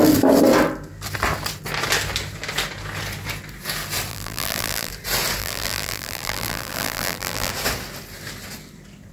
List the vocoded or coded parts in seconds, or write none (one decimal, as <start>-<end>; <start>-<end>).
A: 4.1-4.9; 5.4-7.5